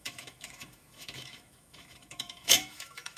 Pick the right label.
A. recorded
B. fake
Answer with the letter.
B